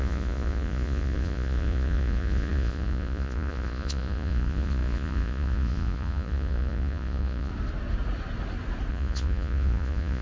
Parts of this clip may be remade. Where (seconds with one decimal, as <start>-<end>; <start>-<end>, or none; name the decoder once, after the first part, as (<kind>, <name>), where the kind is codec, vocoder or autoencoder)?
0.0-7.5 (vocoder, Vocos); 8.9-10.2